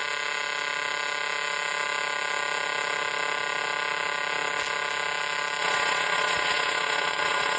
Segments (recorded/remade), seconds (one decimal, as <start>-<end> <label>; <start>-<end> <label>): 0.0-5.6 recorded; 5.6-7.6 remade